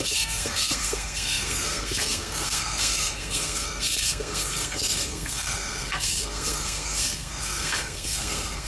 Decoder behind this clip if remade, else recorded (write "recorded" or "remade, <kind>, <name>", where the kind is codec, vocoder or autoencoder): remade, codec, SNAC